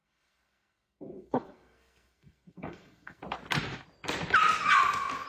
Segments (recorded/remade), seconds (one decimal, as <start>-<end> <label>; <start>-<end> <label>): 0.0-3.2 remade; 3.2-5.3 recorded